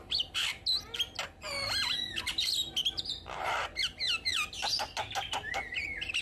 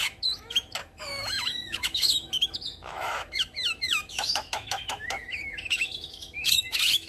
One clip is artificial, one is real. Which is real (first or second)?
first